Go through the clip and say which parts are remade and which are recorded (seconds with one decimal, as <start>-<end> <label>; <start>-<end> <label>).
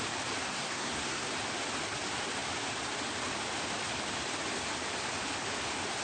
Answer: 0.0-0.5 recorded; 0.5-1.3 remade; 1.3-6.0 recorded